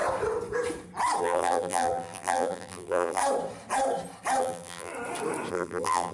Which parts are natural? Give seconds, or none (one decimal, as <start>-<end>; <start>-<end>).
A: 0.0-1.2; 3.2-4.4; 4.9-5.5